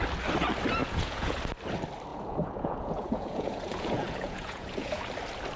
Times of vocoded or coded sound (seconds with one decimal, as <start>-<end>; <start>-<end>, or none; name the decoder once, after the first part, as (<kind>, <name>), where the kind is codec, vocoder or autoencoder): 0.8-1.4 (vocoder, Vocos); 2.1-5.0